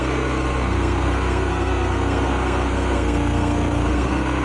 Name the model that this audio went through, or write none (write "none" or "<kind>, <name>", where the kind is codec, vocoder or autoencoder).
codec, SNAC